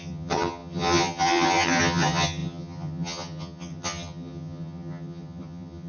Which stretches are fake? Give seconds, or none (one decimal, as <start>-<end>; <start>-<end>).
0.0-5.9